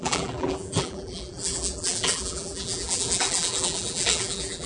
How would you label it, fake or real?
fake